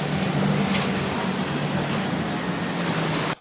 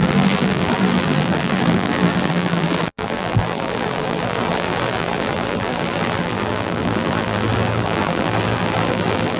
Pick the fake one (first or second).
second